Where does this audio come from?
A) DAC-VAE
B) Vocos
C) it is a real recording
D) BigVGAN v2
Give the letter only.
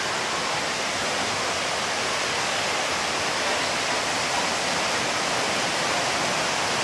C